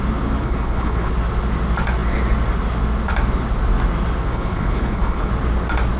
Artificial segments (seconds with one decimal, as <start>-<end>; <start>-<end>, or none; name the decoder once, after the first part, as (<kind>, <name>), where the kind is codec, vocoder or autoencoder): 0.4-1.1 (codec, HILCodec); 4.3-5.3